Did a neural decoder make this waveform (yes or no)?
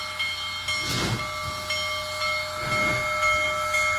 no